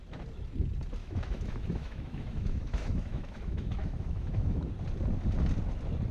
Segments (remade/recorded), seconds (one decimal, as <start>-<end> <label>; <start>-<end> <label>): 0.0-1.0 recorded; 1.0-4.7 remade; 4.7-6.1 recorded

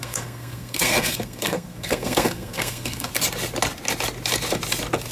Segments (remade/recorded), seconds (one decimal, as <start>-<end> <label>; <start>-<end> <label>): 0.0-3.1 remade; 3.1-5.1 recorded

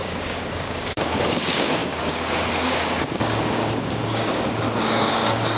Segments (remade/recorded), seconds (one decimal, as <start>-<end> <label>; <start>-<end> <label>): 0.0-5.6 remade

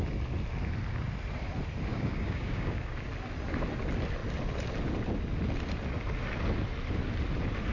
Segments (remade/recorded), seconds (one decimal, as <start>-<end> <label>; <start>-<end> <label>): 0.0-1.9 recorded; 1.9-2.9 remade; 2.9-7.7 recorded

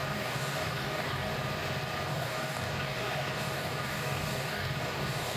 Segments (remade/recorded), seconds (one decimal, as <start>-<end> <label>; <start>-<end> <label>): 0.0-1.3 remade; 1.3-2.1 recorded; 2.1-5.4 remade

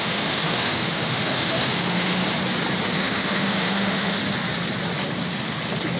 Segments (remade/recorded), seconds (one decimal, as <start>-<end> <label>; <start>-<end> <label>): 0.0-2.2 remade; 2.2-2.8 recorded; 2.8-4.2 remade; 4.2-6.0 recorded

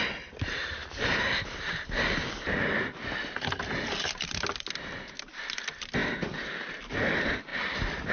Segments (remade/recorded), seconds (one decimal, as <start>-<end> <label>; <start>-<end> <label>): 0.0-8.1 recorded

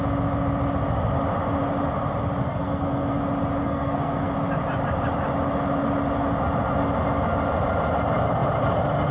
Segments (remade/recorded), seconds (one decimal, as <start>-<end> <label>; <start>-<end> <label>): 0.0-2.4 recorded; 2.4-3.2 remade; 3.2-3.6 recorded; 3.6-4.3 remade; 4.3-9.1 recorded